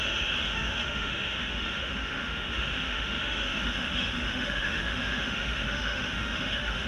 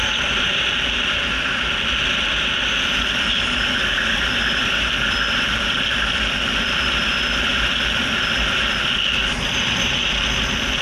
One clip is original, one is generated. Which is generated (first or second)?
first